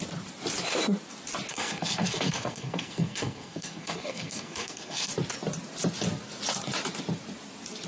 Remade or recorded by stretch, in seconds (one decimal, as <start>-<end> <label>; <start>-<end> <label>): 0.0-1.5 recorded; 1.5-5.1 remade; 5.1-7.9 recorded